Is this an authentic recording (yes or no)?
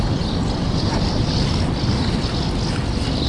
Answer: yes